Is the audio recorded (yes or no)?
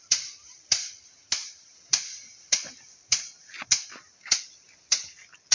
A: yes